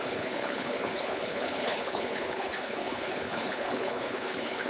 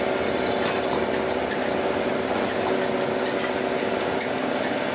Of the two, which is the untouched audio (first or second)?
second